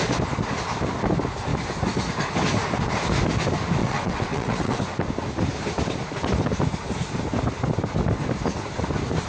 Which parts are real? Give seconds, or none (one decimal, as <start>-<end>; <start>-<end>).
0.0-3.8; 4.8-9.3